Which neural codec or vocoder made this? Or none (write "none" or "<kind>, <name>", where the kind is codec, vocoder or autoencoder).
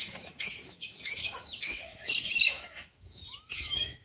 autoencoder, DAC-VAE